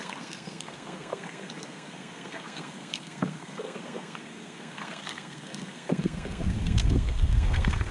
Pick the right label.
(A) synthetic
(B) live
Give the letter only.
A